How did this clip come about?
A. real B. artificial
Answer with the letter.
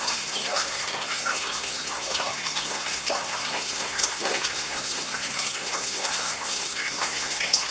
B